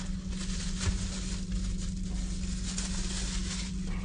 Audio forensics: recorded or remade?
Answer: recorded